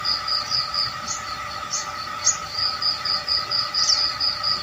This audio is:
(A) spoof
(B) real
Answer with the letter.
B